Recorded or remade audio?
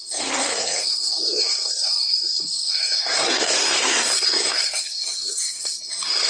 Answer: remade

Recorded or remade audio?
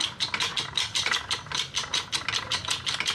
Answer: recorded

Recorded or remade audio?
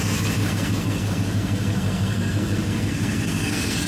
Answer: remade